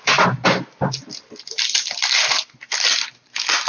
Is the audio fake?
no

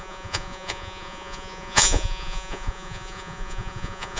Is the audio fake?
yes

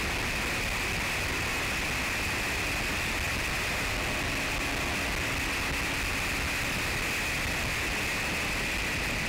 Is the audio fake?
no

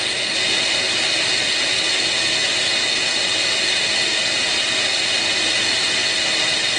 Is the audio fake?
no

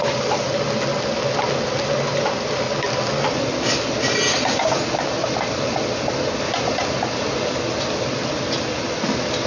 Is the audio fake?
no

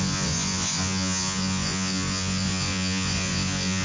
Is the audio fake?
yes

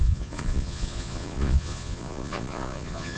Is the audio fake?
yes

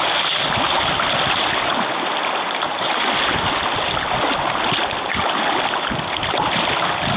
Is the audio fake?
no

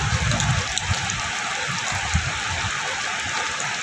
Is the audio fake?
no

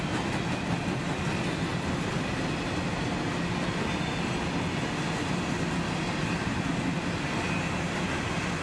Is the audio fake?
no